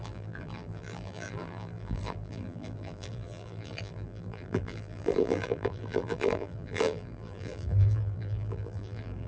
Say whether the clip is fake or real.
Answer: fake